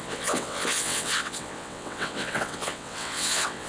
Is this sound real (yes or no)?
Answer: no